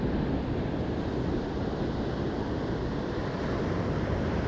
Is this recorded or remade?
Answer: recorded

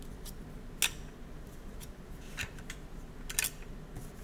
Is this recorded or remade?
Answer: recorded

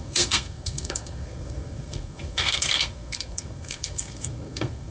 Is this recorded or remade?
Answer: remade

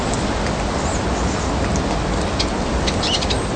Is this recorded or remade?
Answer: recorded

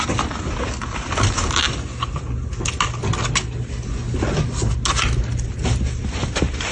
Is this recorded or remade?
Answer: recorded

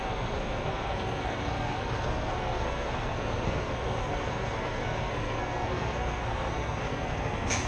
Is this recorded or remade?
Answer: remade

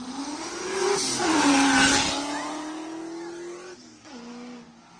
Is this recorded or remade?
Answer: recorded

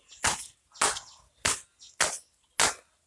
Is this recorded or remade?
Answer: recorded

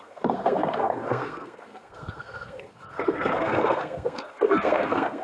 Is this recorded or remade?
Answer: remade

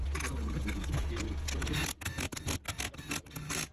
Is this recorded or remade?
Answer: recorded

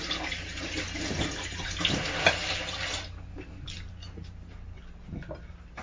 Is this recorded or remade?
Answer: recorded